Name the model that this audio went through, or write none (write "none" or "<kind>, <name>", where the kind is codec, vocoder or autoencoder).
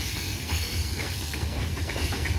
codec, SNAC